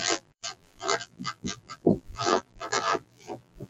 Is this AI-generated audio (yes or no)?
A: yes